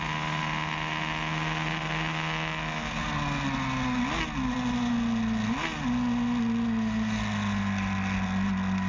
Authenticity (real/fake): real